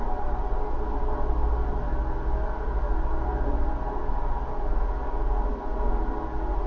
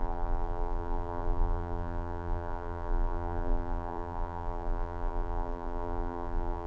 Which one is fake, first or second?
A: second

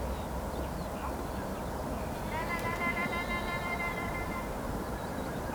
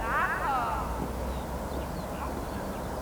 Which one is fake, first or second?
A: first